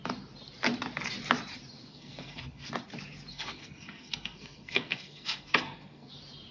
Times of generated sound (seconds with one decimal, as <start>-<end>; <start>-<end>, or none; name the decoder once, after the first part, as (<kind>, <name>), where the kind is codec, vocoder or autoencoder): 1.9-2.7 (codec, SNAC); 3.3-6.1